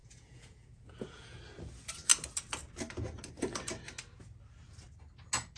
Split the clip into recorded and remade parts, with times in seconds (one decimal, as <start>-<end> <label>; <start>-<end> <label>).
0.0-1.4 remade; 1.4-5.6 recorded